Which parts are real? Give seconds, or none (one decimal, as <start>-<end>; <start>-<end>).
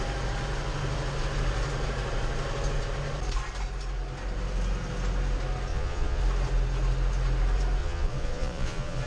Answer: 0.0-5.7; 6.2-7.8